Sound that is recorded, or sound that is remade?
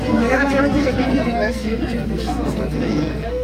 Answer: remade